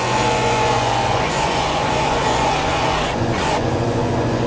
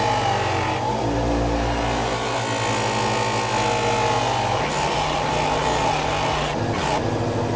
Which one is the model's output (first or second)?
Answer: first